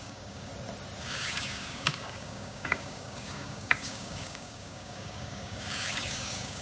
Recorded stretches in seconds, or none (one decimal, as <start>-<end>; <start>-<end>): 0.5-1.0